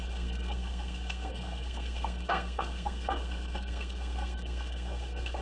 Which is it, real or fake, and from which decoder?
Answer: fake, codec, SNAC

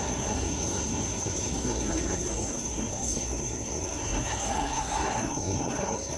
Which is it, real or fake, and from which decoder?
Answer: fake, codec, SNAC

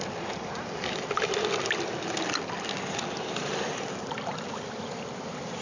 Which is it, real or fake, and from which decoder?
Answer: real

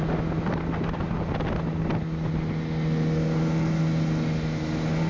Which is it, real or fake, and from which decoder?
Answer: real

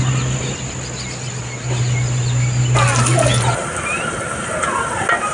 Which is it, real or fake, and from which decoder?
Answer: real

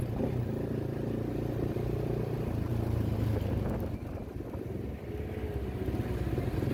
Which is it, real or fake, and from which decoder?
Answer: real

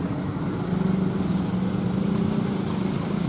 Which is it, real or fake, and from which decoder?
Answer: real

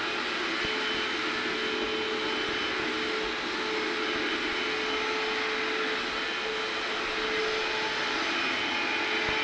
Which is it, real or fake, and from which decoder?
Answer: real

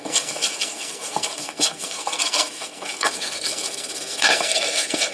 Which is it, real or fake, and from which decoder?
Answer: fake, codec, SNAC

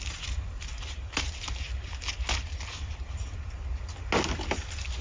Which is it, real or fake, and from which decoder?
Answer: real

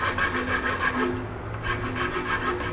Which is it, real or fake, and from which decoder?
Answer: real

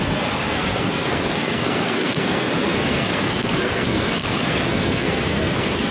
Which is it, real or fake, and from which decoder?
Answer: fake, codec, SNAC